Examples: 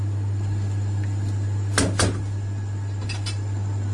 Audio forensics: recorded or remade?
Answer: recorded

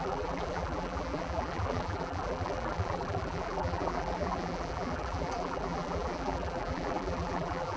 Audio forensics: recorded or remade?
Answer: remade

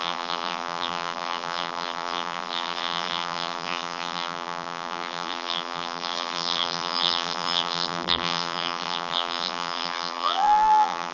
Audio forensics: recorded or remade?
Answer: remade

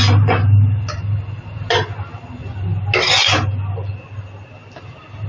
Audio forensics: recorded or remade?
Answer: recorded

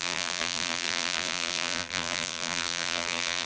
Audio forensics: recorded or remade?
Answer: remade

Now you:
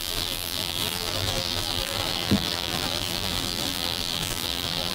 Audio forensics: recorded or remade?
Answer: remade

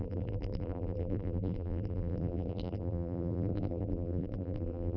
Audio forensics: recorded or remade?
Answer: remade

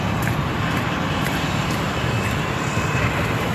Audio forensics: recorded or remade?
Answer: remade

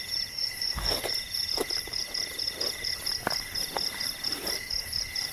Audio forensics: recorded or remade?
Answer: remade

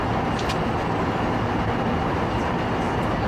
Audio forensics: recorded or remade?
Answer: recorded